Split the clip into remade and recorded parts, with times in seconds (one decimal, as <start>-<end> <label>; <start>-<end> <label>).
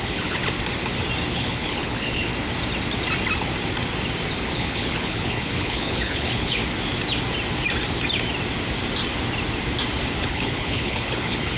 0.0-0.4 remade; 0.4-1.3 recorded; 1.3-2.3 remade; 2.3-4.6 recorded; 4.6-6.6 remade; 6.6-10.2 recorded; 10.2-11.6 remade